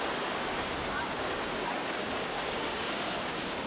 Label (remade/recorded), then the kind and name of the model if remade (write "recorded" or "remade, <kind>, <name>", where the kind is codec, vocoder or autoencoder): remade, codec, DAC